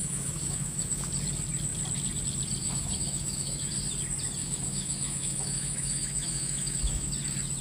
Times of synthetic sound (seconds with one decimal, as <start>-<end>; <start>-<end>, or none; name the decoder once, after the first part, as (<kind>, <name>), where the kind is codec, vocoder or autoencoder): 0.0-1.1 (autoencoder, DAC-VAE); 2.6-3.7; 4.4-7.1